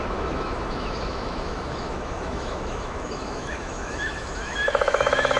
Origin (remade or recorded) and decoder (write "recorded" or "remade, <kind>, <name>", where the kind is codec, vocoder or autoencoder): remade, autoencoder, DAC-VAE